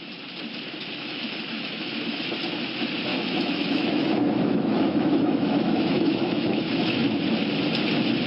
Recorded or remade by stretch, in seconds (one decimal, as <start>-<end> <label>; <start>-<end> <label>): 0.0-0.8 recorded; 0.8-1.9 remade; 1.9-3.1 recorded; 3.1-6.6 remade; 6.6-8.3 recorded